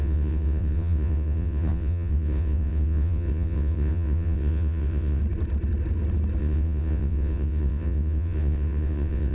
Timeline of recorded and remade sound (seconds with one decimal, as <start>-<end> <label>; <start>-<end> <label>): 0.0-5.2 remade; 5.2-6.4 recorded; 6.4-9.3 remade